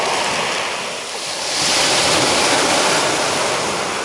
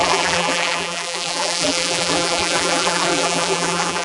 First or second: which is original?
first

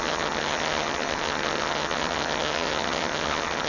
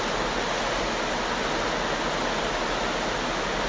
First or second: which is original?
second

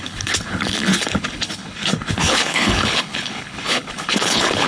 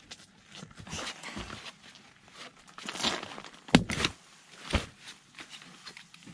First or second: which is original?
second